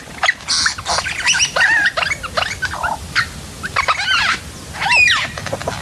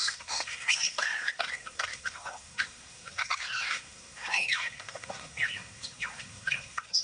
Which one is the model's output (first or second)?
second